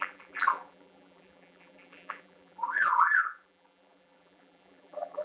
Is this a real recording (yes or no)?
no